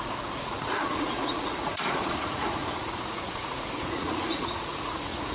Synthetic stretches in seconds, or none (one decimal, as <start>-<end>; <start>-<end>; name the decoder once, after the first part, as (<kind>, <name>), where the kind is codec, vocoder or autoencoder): 0.0-5.3 (vocoder, Vocos)